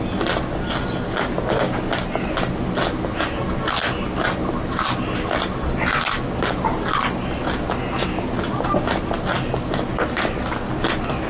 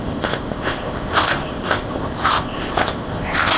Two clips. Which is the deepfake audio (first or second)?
second